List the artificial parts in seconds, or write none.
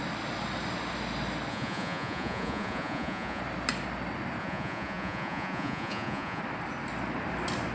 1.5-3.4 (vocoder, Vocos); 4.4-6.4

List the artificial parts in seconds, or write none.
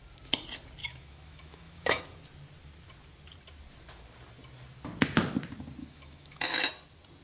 0.8-2.0 (autoencoder, DAC-VAE); 5.8-6.7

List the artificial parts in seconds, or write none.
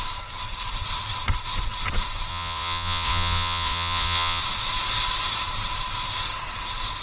2.3-4.4 (vocoder, Vocos)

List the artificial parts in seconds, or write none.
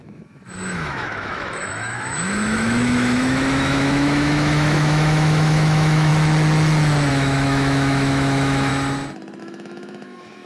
0.0-6.1 (autoencoder, DAC-VAE); 7.1-8.7; 9.4-10.5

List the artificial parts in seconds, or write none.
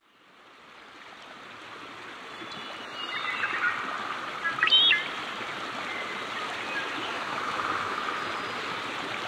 7.1-8.0 (autoencoder, DAC-VAE)